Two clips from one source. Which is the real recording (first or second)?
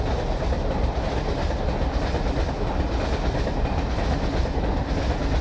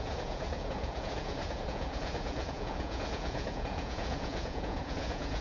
first